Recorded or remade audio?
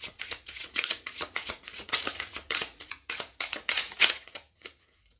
remade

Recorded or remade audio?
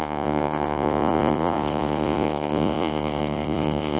remade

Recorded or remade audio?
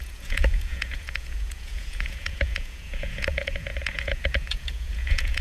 remade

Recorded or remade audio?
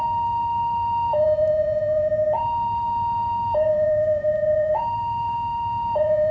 remade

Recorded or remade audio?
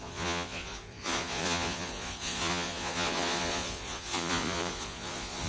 remade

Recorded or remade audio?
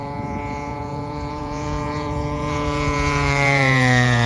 remade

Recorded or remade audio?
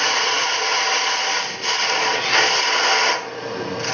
recorded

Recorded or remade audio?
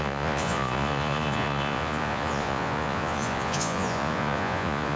remade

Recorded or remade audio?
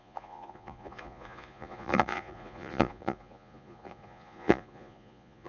remade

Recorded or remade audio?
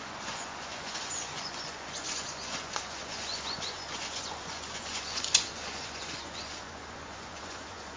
remade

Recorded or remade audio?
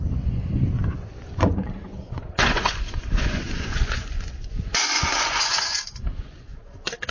remade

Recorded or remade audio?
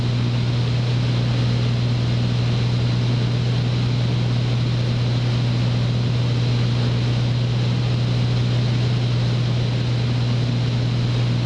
recorded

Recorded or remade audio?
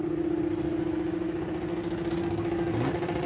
recorded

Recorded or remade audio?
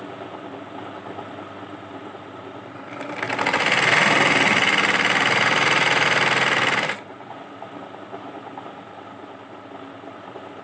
recorded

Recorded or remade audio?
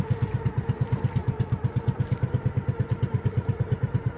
recorded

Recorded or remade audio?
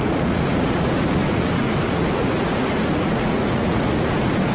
remade